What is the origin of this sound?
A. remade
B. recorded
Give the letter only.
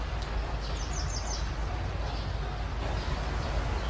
B